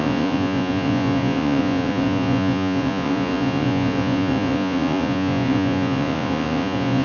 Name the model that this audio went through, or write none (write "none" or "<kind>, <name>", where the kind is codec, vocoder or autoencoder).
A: vocoder, Vocos